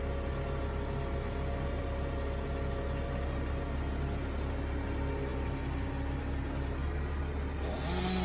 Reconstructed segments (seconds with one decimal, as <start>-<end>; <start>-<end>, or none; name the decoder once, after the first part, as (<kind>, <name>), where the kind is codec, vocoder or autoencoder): none

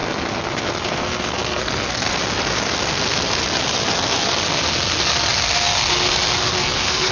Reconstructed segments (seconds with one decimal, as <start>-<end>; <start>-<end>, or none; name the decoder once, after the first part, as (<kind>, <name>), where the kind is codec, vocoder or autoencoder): 0.9-2.1 (codec, SNAC); 6.4-7.1

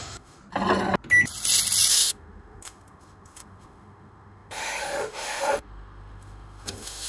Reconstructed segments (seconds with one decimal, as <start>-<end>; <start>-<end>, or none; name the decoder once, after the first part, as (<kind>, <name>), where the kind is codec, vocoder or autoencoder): 0.0-0.4 (autoencoder, DAC-VAE); 1.9-7.1

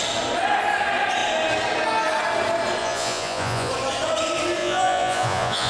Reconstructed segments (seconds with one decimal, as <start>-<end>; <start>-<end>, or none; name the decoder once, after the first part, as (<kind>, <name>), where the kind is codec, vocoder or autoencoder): 2.8-3.7 (vocoder, Vocos); 4.6-5.7

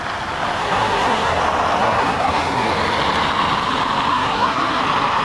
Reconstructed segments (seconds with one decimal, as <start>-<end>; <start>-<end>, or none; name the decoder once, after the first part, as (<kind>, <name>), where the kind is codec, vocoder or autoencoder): 0.6-1.4 (codec, SNAC); 1.8-2.7; 4.1-4.8

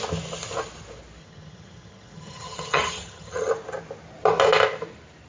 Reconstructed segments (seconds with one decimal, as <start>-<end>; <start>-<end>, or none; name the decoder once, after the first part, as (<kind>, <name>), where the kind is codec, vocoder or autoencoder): 1.2-3.5 (vocoder, HiFi-GAN)